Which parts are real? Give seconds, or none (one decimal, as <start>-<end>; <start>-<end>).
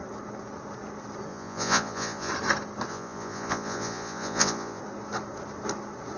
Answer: 0.0-1.3; 2.3-2.9; 4.8-6.2